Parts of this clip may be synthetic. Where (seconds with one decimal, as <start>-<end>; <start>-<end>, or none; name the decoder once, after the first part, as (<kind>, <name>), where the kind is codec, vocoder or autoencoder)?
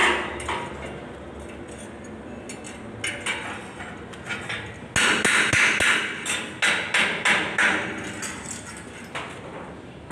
none